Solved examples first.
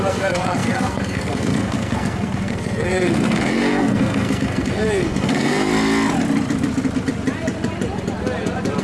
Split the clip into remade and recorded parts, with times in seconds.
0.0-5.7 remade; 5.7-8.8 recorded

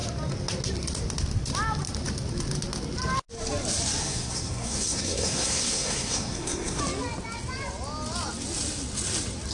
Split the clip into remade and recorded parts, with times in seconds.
0.0-4.0 recorded; 4.0-6.8 remade; 6.8-9.5 recorded

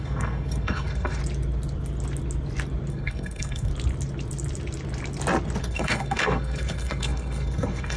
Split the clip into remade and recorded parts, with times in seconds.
0.0-1.2 remade; 1.2-2.9 recorded; 2.9-3.7 remade; 3.7-5.6 recorded; 5.6-8.0 remade

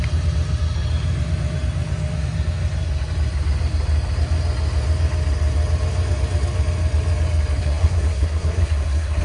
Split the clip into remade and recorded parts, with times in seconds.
0.0-7.6 recorded; 7.6-9.2 remade

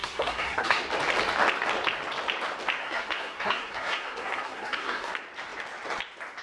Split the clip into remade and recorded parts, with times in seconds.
0.0-0.8 remade; 0.8-2.8 recorded; 2.8-5.1 remade; 5.1-6.4 recorded

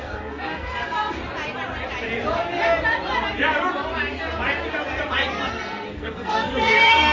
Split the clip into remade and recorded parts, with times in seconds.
0.0-1.2 remade; 1.2-5.5 recorded; 5.5-7.1 remade

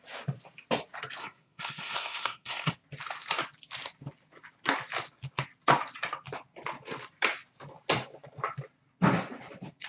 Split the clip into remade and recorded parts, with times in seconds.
0.0-1.2 recorded; 1.2-2.7 remade; 2.7-9.9 recorded

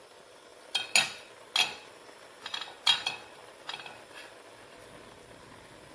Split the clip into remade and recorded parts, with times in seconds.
0.0-5.9 recorded